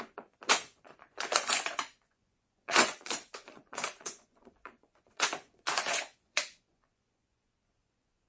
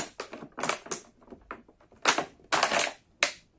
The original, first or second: second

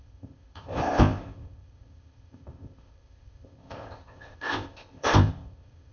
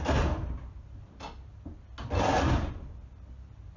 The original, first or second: second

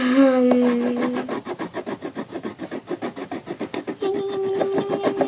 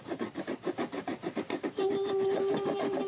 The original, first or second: first